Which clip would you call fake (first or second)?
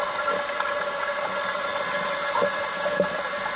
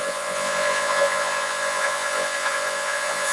second